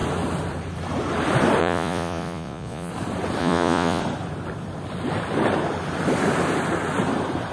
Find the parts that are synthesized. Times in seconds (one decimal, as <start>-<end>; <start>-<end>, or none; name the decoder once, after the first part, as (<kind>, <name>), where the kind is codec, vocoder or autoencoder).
1.6-2.9 (vocoder, Vocos); 3.4-4.0